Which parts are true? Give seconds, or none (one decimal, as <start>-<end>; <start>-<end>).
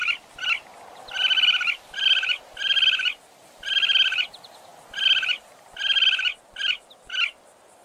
0.0-7.8